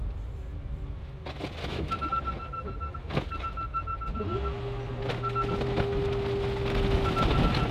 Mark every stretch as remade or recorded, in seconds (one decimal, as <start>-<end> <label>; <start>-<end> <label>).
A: 0.0-1.6 recorded; 1.6-2.1 remade; 2.1-7.7 recorded

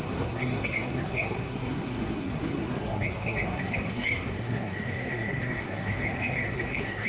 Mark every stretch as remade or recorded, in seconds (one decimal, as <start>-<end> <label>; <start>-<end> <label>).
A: 0.0-7.1 remade

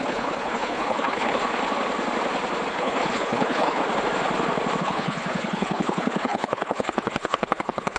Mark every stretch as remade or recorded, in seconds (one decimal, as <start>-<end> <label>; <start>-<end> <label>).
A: 0.0-1.4 remade; 1.4-2.7 recorded; 2.7-3.8 remade; 3.8-4.8 recorded; 4.8-8.0 remade